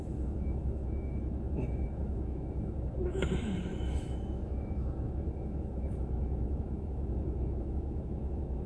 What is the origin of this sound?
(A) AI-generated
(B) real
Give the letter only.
A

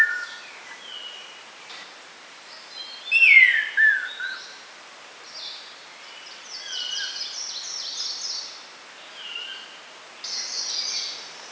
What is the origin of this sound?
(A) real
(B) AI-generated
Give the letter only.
A